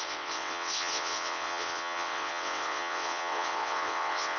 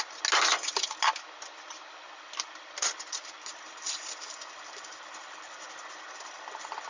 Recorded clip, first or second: second